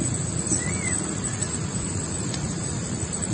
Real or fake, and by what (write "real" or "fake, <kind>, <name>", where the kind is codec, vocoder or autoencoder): fake, vocoder, Vocos